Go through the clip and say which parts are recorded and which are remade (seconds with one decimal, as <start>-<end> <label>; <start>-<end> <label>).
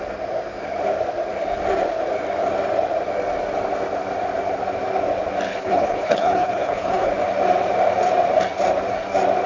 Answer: 0.0-5.5 recorded; 5.5-7.1 remade; 7.1-9.5 recorded